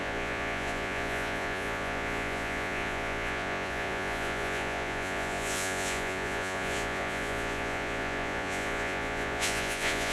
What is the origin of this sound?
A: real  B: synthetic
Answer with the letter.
B